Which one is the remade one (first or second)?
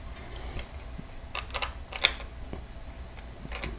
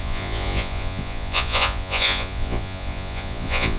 second